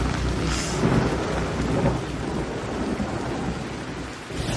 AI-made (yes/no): no